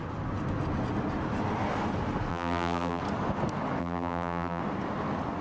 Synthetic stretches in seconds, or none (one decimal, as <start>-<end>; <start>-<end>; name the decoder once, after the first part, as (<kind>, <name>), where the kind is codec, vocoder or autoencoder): 2.3-3.0 (vocoder, BigVGAN v2); 3.8-4.6